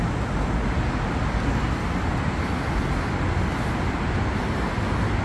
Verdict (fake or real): real